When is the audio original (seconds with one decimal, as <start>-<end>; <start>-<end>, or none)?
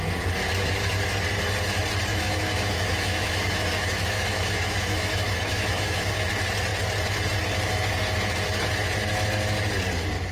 0.0-2.1; 6.1-10.3